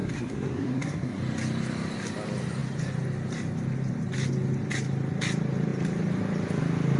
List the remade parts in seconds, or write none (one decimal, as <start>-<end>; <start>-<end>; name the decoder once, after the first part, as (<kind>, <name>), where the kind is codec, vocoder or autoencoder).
0.0-1.2 (codec, SNAC)